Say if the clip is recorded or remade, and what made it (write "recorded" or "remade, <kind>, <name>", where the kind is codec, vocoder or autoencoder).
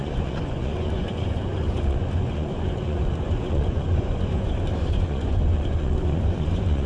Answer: remade, vocoder, Vocos